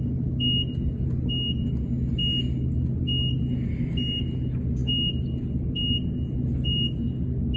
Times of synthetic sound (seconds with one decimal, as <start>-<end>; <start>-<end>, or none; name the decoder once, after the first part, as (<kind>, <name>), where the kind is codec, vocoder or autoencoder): none